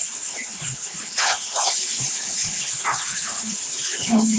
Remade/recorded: remade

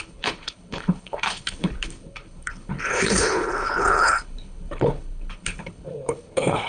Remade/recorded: remade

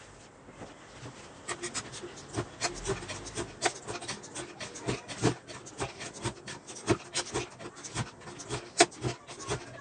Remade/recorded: recorded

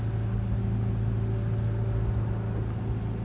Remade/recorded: recorded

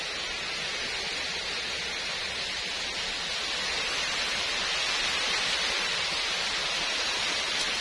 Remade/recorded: recorded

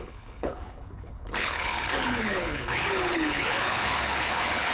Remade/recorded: remade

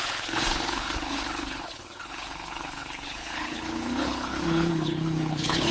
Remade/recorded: remade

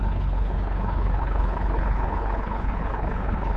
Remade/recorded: remade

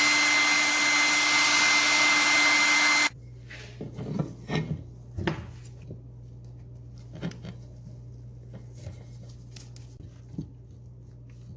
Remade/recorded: recorded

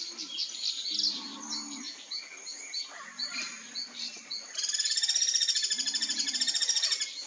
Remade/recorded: recorded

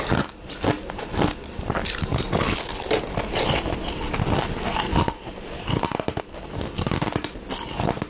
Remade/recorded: recorded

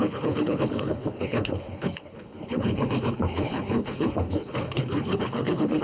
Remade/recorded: remade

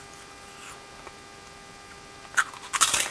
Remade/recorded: recorded